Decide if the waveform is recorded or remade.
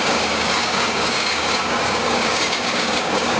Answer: remade